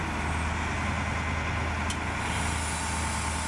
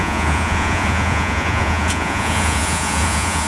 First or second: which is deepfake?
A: second